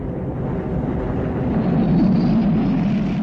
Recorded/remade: recorded